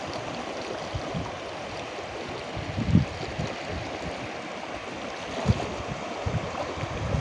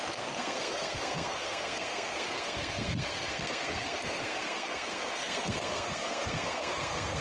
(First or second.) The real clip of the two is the first